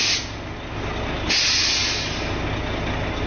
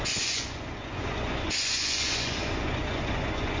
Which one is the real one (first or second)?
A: first